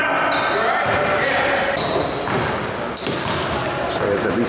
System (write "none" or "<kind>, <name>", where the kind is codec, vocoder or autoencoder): none